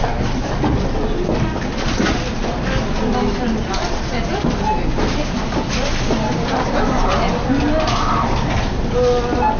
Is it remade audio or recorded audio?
recorded